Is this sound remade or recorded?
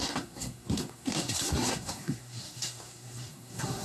remade